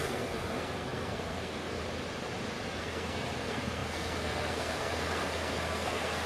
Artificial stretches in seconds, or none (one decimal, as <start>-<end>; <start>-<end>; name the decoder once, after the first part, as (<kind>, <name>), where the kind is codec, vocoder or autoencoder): 0.0-1.8 (codec, SNAC); 2.7-6.3